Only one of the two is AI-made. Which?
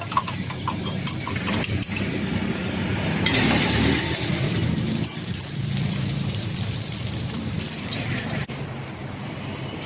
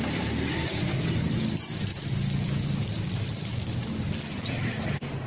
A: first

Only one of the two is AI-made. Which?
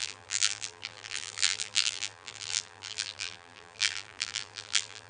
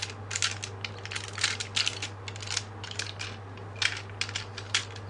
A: first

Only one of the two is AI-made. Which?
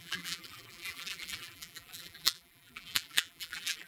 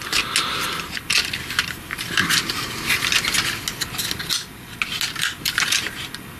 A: first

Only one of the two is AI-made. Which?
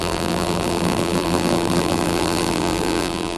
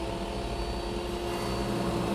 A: first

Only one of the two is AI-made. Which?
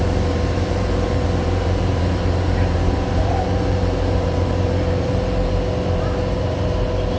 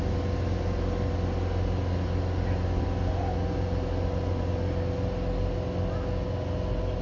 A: first